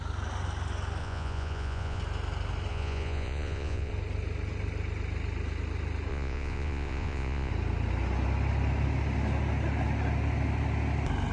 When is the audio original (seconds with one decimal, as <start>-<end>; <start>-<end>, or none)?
0.0-1.0; 2.0-2.7; 3.9-6.1; 7.5-11.3